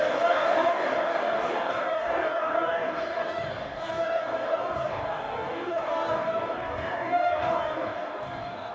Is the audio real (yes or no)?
no